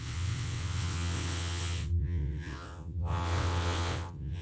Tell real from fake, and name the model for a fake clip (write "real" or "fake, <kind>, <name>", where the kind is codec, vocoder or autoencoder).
fake, vocoder, WaveNeXt